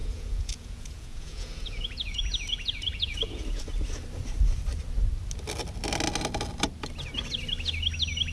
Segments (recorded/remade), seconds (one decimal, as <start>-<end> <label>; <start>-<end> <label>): 0.0-3.6 remade; 3.6-8.3 recorded